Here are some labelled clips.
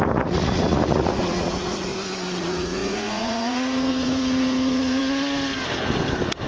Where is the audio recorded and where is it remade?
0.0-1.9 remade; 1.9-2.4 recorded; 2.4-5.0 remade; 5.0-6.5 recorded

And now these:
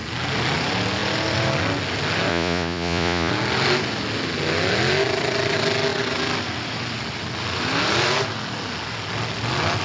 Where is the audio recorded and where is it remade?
0.0-2.3 recorded; 2.3-3.3 remade; 3.3-9.8 recorded

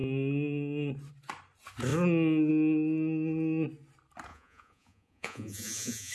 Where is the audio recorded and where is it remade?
0.0-4.3 recorded; 4.3-6.1 remade

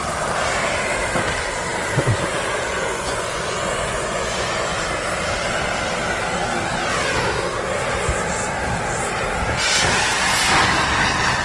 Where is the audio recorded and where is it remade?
0.0-2.7 recorded; 2.7-4.8 remade; 4.8-11.4 recorded

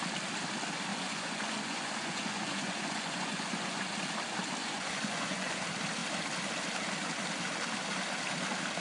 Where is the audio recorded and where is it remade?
0.0-0.9 recorded; 0.9-3.9 remade; 3.9-4.6 recorded; 4.6-5.6 remade; 5.6-8.8 recorded

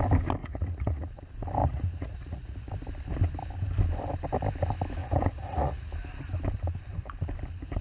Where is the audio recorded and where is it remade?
0.0-0.4 recorded; 0.4-1.2 remade; 1.2-1.6 recorded; 1.6-2.7 remade; 2.7-5.0 recorded; 5.0-5.9 remade; 5.9-7.8 recorded